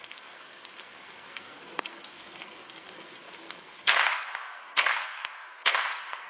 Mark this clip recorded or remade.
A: remade